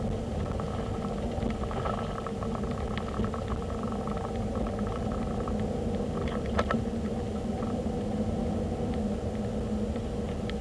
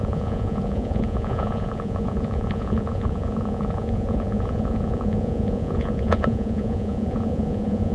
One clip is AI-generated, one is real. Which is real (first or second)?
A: first